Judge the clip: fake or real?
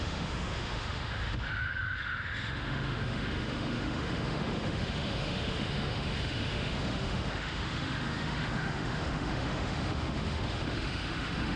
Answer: fake